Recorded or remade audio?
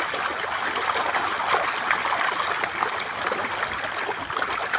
recorded